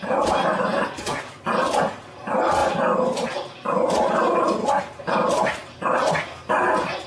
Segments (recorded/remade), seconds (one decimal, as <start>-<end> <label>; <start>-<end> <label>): 0.0-7.1 recorded